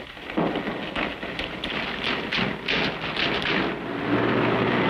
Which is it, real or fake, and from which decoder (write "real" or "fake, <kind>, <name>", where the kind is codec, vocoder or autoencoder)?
real